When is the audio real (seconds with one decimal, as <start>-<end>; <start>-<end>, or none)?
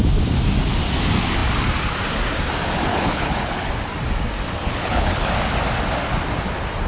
0.0-2.9; 3.7-4.6; 5.3-6.9